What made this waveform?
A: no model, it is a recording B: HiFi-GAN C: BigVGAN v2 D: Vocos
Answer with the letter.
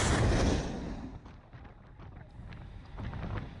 A